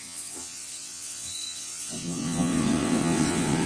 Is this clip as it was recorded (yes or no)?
no